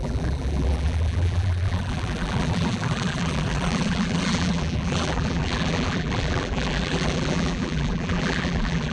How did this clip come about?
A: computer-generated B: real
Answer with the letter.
A